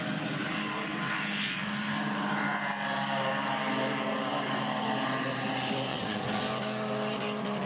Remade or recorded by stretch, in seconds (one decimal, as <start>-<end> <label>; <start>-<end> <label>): 0.0-5.9 recorded; 5.9-6.4 remade; 6.4-7.7 recorded